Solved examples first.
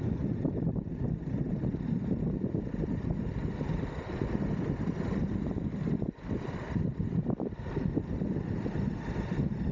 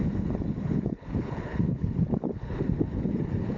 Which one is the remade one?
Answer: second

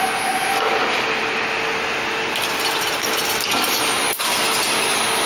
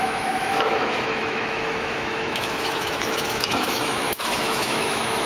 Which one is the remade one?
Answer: second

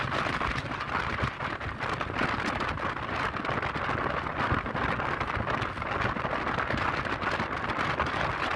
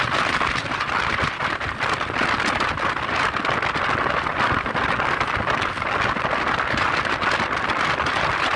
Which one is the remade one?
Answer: second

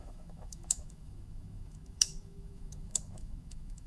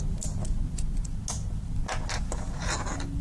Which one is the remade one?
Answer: first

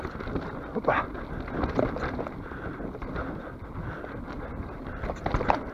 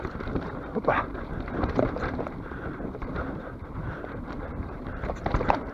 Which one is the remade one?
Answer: second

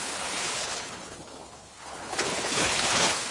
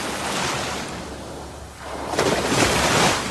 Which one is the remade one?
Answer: first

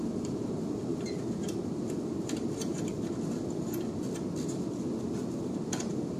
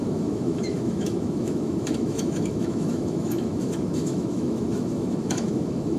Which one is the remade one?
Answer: second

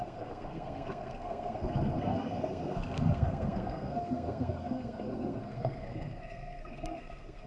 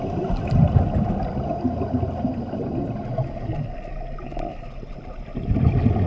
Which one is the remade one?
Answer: first